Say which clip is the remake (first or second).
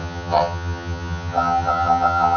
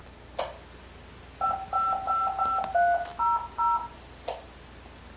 first